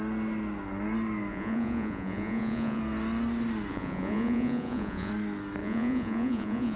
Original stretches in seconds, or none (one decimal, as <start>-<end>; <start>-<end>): 0.0-1.3; 2.8-3.7; 5.1-5.6